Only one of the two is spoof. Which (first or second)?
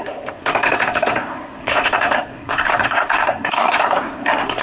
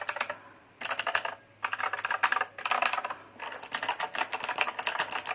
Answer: first